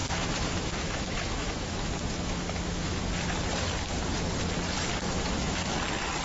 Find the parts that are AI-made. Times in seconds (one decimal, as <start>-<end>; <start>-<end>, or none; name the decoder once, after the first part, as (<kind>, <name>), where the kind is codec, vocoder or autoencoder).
0.0-3.1 (autoencoder, DAC-VAE); 4.9-5.7